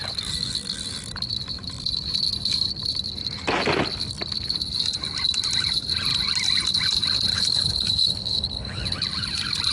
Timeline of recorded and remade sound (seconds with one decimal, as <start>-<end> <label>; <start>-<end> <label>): 0.0-7.3 recorded; 7.3-8.8 remade; 8.8-9.7 recorded